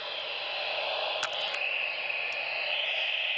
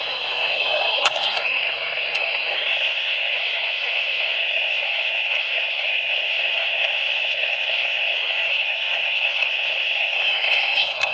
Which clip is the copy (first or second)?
second